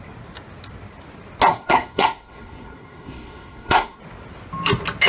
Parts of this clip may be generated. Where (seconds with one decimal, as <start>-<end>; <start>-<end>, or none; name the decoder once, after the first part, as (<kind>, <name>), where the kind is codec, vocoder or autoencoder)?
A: 1.5-4.0 (codec, SNAC)